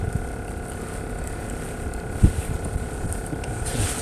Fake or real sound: real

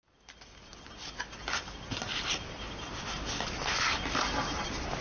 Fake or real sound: real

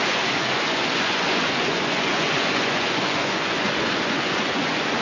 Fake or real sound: fake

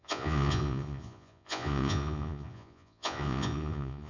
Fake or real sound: fake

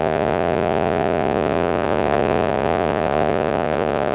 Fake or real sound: fake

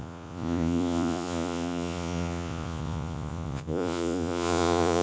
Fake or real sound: fake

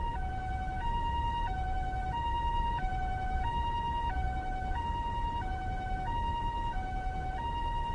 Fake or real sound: real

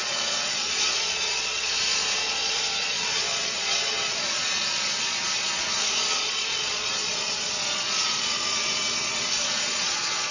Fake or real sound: fake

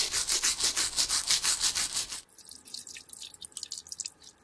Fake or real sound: real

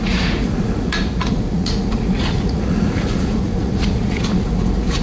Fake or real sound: fake